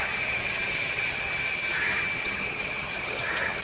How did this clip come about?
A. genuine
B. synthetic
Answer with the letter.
B